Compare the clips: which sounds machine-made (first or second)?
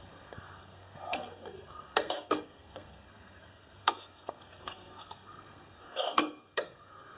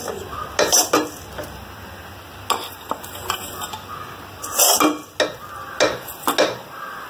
first